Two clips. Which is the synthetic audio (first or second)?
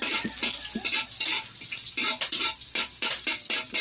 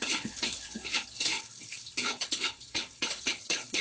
second